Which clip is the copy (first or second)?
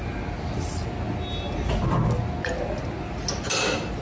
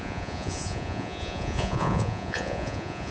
second